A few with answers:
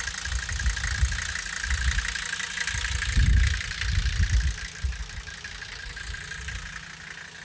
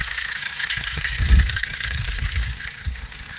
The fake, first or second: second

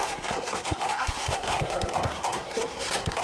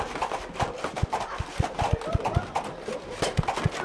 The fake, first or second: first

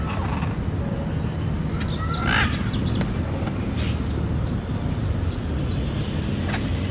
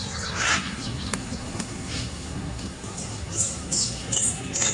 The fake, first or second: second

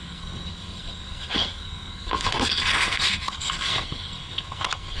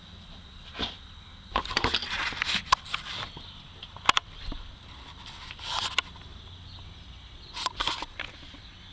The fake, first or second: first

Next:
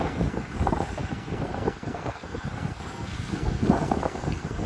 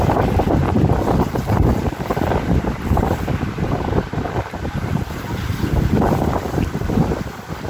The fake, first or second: first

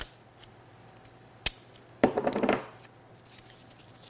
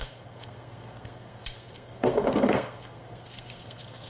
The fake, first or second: second